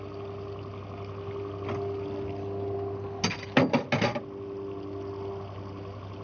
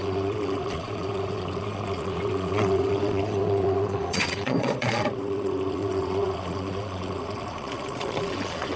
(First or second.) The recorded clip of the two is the first